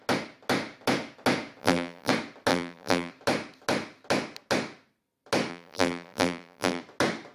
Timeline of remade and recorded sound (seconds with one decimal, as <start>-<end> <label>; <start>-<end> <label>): 0.0-1.6 recorded; 1.6-2.1 remade; 2.1-2.5 recorded; 2.5-3.1 remade; 3.1-5.5 recorded; 5.5-6.8 remade; 6.8-7.3 recorded